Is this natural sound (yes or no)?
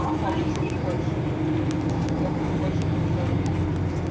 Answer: yes